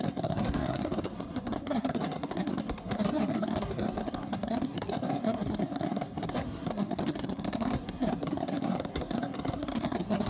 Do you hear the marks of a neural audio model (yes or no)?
yes